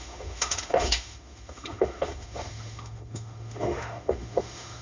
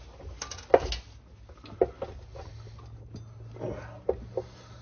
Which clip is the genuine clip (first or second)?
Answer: second